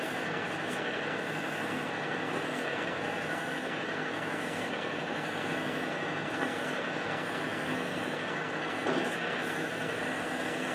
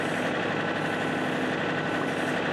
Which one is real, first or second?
second